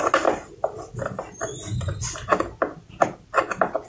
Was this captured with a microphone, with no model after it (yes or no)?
yes